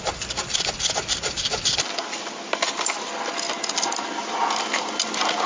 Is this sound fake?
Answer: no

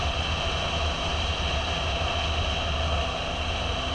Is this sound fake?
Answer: no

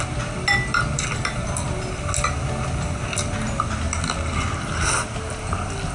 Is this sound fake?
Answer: no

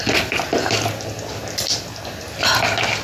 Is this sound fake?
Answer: no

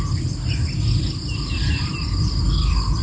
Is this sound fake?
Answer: no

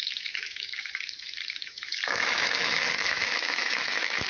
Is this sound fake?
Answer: yes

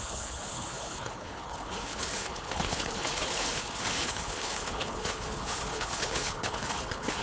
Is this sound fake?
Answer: yes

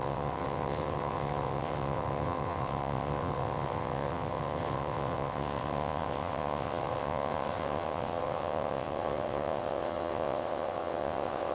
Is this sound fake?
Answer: yes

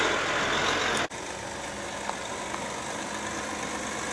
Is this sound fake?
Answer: no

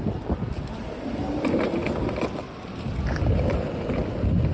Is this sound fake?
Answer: no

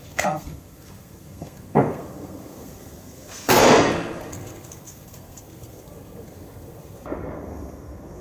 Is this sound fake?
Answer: yes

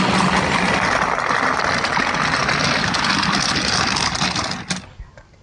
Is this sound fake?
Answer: no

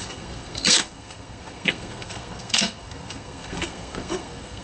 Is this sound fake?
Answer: yes